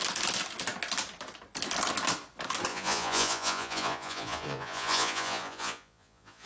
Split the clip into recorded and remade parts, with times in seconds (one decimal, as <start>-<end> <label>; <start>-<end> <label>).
0.0-2.7 recorded; 2.7-6.5 remade